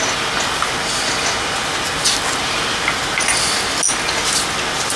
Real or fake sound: real